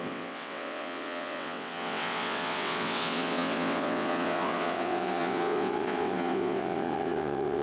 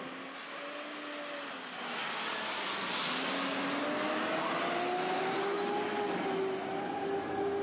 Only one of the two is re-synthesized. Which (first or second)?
first